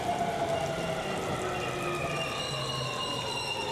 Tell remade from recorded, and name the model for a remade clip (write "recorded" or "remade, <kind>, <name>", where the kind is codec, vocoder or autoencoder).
recorded